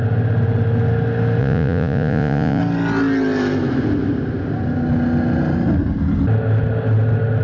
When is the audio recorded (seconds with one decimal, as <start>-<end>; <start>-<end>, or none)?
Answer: 0.0-1.4; 2.6-7.4

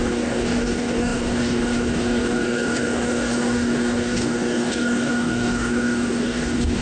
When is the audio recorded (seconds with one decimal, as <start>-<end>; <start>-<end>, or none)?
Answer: none

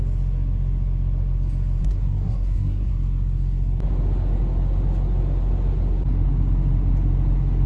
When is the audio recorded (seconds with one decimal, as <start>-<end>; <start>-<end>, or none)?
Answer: 0.0-1.8; 2.9-7.7